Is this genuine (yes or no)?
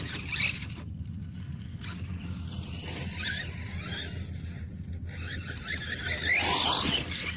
yes